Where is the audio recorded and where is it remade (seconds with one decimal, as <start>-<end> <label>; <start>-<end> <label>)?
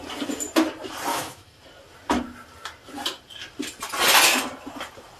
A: 0.0-1.1 recorded; 1.1-1.6 remade; 1.6-5.2 recorded